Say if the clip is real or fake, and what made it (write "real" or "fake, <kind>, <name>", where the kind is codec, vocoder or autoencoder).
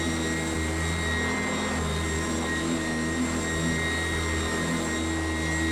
real